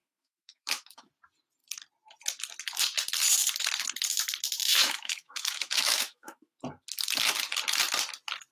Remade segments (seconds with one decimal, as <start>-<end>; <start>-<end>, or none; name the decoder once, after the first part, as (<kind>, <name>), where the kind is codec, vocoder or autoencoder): 0.0-1.1 (autoencoder, DAC-VAE); 4.6-6.6